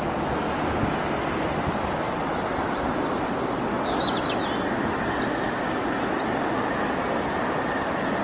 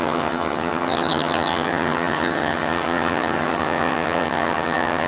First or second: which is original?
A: first